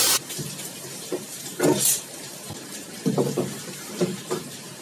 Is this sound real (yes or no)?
no